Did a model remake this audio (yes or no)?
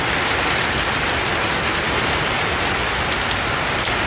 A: no